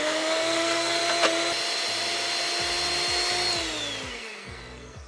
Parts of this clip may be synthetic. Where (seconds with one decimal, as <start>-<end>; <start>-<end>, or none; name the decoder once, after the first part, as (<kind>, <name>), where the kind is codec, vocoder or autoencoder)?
0.0-1.0 (codec, SNAC); 4.1-5.1